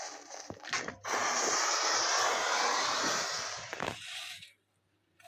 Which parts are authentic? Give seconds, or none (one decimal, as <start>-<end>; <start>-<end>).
none